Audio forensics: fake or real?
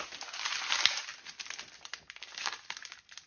real